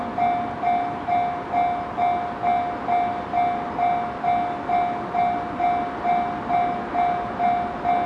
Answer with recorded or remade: recorded